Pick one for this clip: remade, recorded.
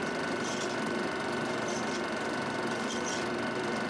remade